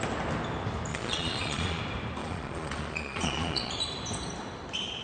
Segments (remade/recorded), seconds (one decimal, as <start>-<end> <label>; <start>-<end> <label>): 0.0-0.9 recorded; 0.9-1.8 remade; 1.8-2.2 recorded; 2.2-3.7 remade; 3.7-5.0 recorded